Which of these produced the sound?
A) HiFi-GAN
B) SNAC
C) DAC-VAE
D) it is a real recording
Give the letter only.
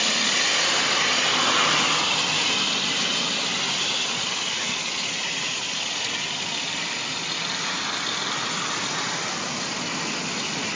D